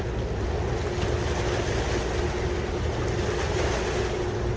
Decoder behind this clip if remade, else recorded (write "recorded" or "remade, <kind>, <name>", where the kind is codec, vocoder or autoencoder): recorded